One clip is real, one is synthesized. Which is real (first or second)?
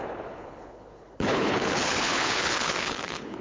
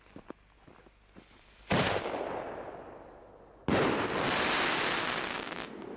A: second